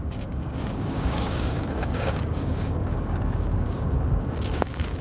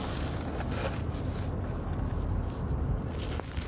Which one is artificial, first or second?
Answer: first